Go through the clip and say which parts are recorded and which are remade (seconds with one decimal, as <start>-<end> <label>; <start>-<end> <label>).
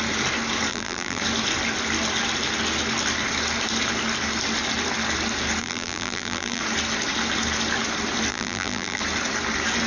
0.0-0.7 recorded; 0.7-1.2 remade; 1.2-5.6 recorded; 5.6-6.6 remade; 6.6-8.3 recorded; 8.3-9.0 remade; 9.0-9.9 recorded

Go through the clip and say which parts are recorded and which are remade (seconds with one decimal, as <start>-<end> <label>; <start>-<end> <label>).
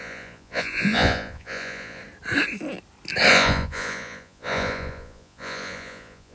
0.0-2.0 remade; 2.0-3.3 recorded; 3.3-6.3 remade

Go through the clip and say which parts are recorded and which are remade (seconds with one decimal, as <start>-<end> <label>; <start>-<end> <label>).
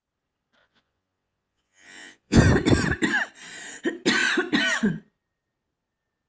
0.0-0.6 recorded; 0.6-2.4 remade; 2.4-6.3 recorded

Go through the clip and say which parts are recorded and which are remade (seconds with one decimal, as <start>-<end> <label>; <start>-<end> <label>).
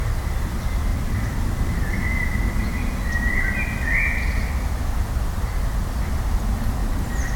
0.0-0.9 recorded; 0.9-1.4 remade; 1.4-7.4 recorded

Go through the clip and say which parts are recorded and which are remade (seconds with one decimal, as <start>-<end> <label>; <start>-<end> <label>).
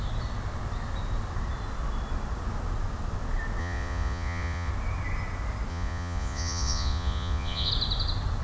0.0-3.6 recorded; 3.6-4.7 remade; 4.7-5.7 recorded; 5.7-7.7 remade; 7.7-8.4 recorded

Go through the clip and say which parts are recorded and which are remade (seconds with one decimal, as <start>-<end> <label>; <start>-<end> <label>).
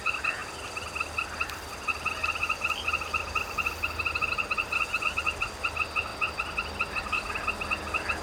0.0-8.2 recorded